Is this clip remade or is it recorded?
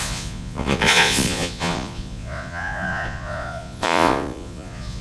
remade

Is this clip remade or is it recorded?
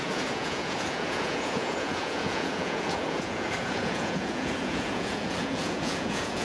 remade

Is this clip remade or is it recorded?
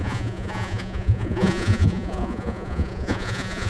remade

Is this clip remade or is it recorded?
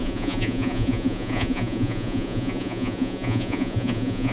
remade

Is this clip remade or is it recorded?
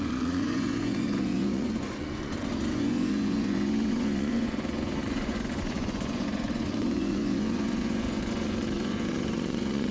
remade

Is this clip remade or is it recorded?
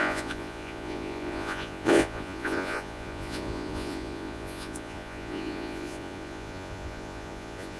remade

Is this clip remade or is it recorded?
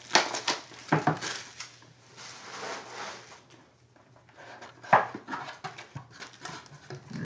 recorded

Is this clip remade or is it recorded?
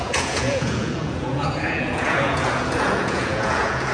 remade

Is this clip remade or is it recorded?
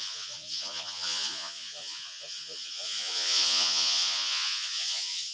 remade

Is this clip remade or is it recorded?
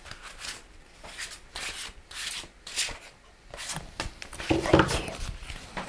recorded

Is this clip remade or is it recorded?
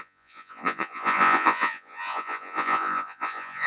remade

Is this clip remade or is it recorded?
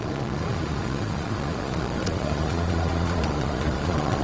remade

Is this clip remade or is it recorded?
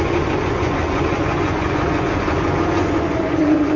remade